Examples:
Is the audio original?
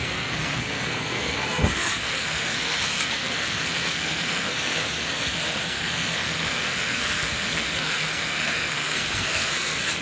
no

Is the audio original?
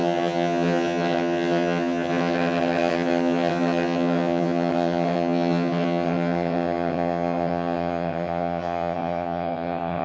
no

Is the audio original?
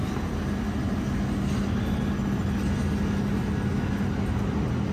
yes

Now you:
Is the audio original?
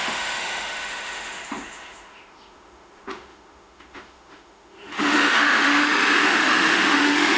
no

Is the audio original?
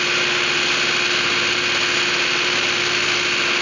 yes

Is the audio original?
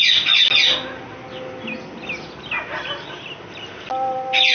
yes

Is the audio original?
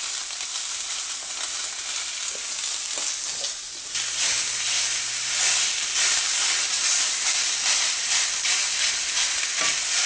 yes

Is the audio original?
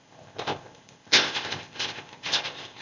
no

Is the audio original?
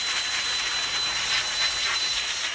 yes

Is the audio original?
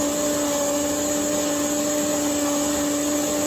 yes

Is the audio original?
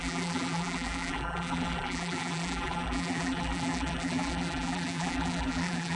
no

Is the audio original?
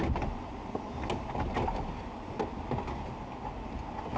yes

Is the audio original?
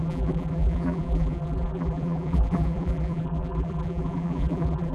no